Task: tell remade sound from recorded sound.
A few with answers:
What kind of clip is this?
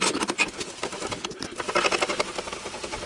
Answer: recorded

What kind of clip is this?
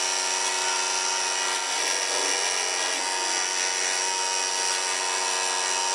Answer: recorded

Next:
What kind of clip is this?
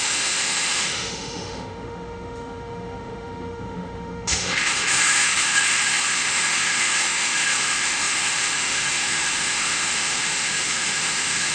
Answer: remade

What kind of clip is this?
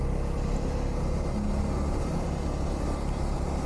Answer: recorded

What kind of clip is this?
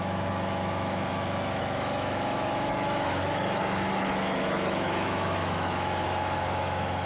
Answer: remade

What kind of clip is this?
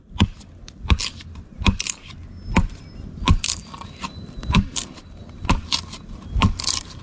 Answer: recorded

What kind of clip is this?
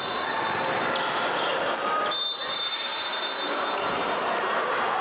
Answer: recorded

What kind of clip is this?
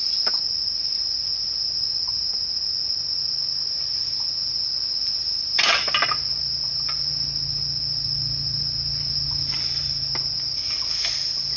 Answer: recorded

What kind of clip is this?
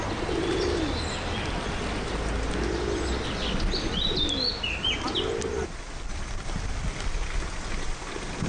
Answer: recorded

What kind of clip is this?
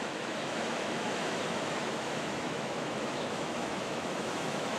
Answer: remade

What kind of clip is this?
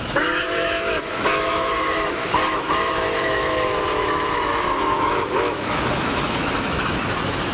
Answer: remade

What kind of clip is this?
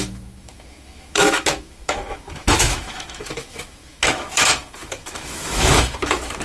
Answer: remade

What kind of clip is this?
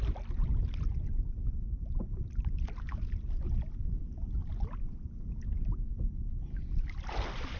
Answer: recorded